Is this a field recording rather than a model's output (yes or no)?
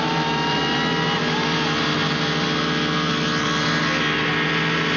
yes